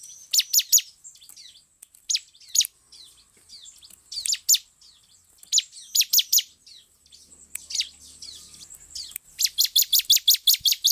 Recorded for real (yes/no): yes